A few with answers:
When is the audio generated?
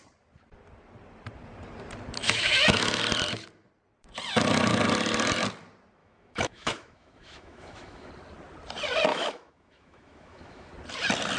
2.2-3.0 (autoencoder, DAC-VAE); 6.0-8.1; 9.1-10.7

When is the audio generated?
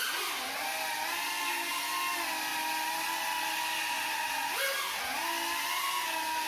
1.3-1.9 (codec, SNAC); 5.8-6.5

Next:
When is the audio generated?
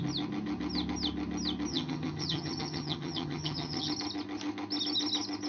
1.7-3.9 (vocoder, HiFi-GAN)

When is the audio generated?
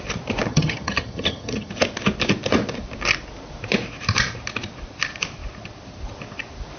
0.5-1.7 (vocoder, HiFi-GAN)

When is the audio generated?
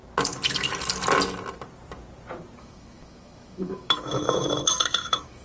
2.6-5.4 (autoencoder, DAC-VAE)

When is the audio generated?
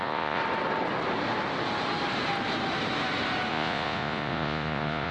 0.0-0.4 (vocoder, Vocos); 3.5-5.1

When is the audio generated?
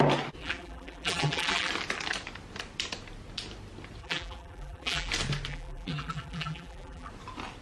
0.4-1.7 (vocoder, BigVGAN v2); 4.0-5.1; 5.5-7.1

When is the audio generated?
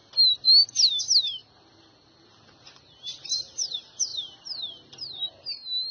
none